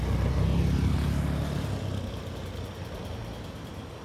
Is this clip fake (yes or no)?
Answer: no